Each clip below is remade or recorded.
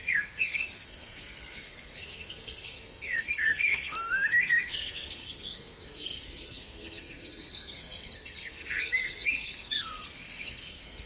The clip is remade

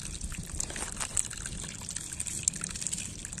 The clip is recorded